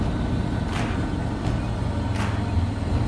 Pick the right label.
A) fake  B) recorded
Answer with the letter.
B